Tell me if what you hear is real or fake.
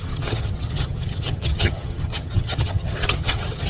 fake